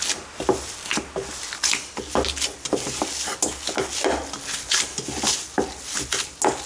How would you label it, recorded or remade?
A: recorded